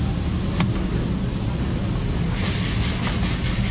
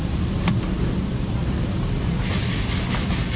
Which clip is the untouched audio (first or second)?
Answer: first